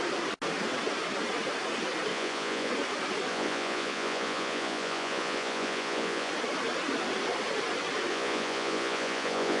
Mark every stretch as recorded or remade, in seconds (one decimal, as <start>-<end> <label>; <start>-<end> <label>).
0.0-2.1 recorded; 2.1-2.7 remade; 2.7-3.3 recorded; 3.3-6.3 remade; 6.3-8.1 recorded; 8.1-9.6 remade